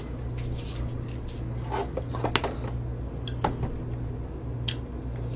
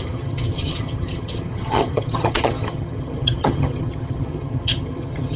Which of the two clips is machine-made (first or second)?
second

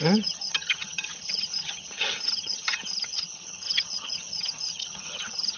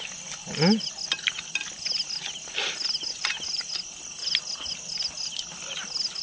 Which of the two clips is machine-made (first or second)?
first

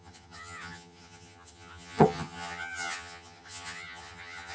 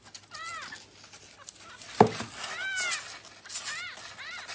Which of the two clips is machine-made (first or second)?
first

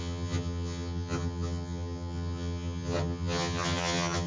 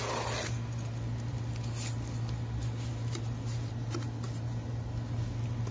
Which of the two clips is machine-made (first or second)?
first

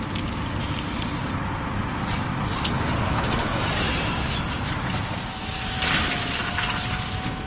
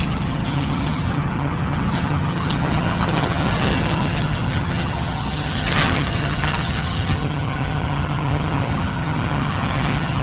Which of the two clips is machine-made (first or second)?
second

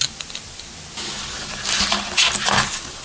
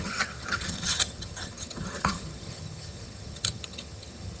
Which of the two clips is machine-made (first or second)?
second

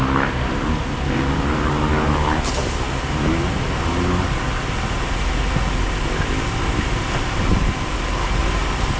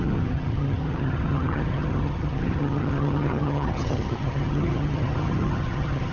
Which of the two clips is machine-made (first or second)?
second